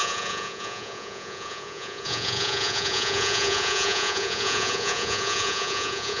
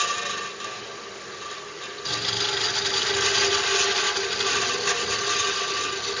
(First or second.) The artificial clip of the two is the first